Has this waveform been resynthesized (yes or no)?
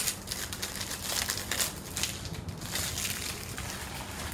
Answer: no